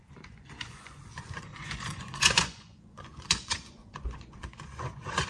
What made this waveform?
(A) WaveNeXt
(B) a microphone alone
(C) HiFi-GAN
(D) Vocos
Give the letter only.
D